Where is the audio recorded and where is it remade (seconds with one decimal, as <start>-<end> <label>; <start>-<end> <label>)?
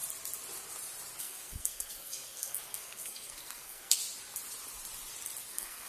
0.0-1.2 recorded; 1.2-4.0 remade; 4.0-5.5 recorded; 5.5-5.9 remade